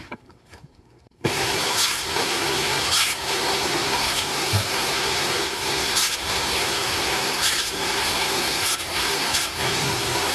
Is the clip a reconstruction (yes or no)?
yes